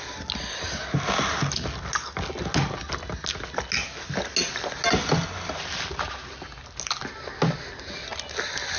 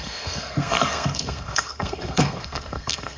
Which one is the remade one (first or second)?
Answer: second